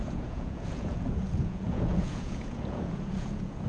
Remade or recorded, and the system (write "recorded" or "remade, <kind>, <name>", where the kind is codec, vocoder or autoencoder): remade, vocoder, Vocos